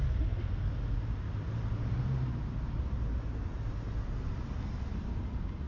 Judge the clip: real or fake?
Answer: real